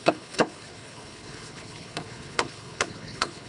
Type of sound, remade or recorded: remade